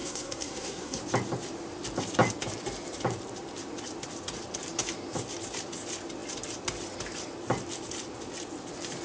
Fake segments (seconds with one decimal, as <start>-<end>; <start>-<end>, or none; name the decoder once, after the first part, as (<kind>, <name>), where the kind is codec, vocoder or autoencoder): 0.0-1.0 (codec, SNAC)